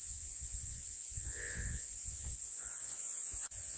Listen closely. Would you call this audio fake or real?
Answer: fake